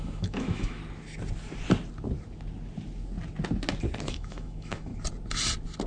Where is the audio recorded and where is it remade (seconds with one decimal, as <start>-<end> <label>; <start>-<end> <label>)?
0.0-0.8 remade; 0.8-4.1 recorded; 4.1-4.9 remade; 4.9-5.9 recorded